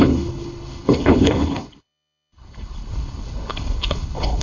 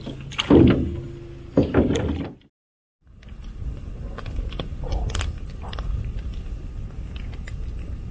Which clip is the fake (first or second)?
first